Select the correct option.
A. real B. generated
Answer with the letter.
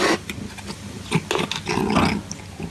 A